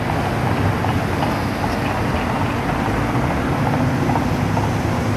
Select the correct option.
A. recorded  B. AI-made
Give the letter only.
A